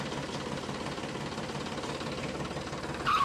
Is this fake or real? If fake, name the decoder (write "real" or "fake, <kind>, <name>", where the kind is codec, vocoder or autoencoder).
fake, vocoder, BigVGAN v2